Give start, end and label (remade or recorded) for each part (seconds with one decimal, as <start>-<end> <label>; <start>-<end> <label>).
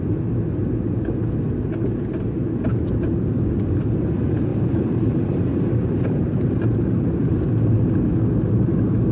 0.0-2.7 recorded; 2.7-3.3 remade; 3.3-4.5 recorded; 4.5-7.5 remade; 7.5-9.1 recorded